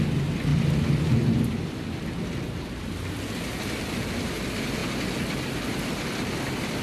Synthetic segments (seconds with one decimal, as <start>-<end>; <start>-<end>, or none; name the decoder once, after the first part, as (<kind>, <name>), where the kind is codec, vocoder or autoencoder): none